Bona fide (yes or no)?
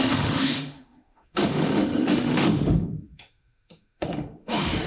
no